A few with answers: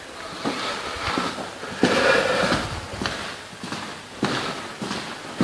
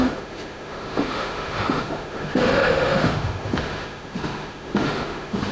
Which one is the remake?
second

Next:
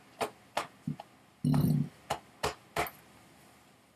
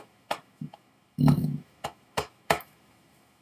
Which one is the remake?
second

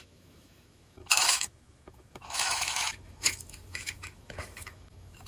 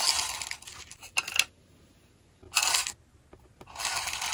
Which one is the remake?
first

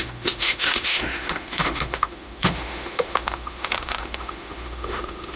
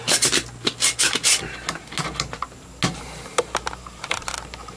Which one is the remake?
first